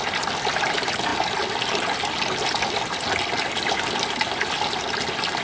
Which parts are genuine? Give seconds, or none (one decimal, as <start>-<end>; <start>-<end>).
0.0-5.4